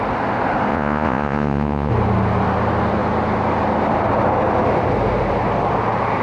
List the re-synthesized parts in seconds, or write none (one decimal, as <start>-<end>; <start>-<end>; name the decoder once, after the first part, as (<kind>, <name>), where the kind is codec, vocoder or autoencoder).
0.7-1.9 (vocoder, Vocos)